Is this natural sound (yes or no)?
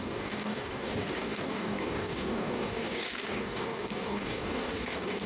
no